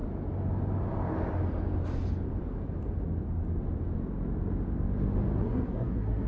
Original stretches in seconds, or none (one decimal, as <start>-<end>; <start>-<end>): 0.0-5.4